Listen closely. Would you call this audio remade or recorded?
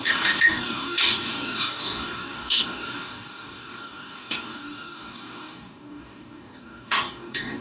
remade